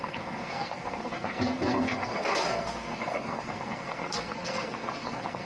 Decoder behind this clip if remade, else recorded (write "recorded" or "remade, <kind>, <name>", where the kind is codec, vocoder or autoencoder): remade, codec, SNAC